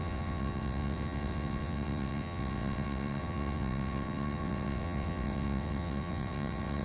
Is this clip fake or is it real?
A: fake